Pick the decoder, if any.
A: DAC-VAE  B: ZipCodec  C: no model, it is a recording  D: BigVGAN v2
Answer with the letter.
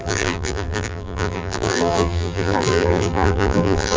D